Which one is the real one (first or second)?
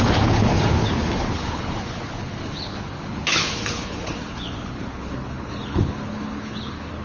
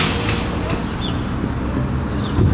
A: second